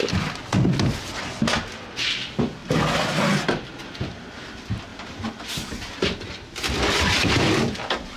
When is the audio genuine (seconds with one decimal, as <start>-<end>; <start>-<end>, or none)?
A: 0.0-8.2